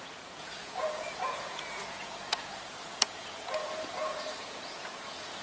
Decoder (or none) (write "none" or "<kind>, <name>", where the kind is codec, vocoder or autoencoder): vocoder, Vocos